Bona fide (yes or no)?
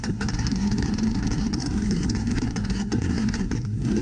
no